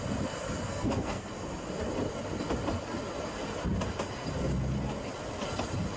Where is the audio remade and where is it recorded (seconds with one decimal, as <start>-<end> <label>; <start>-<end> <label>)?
0.0-0.7 recorded; 0.7-1.3 remade; 1.3-6.0 recorded